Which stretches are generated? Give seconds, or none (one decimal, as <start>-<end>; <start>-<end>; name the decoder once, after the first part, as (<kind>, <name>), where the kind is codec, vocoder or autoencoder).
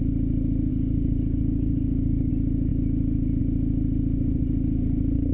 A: 0.7-2.3 (codec, DAC)